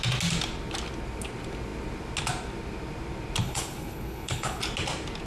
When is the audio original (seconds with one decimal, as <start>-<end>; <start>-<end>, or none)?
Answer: 0.0-3.4; 4.6-5.3